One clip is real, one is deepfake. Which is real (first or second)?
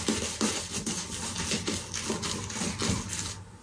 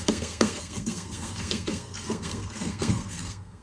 first